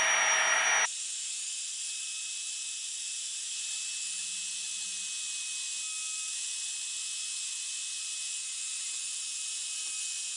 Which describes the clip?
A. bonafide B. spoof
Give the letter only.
A